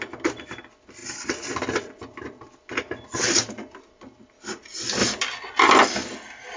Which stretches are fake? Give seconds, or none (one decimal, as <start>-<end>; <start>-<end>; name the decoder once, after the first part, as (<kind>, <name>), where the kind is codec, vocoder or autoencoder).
none